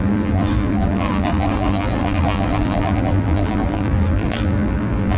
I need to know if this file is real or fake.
fake